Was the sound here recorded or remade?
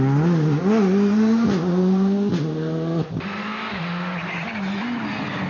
recorded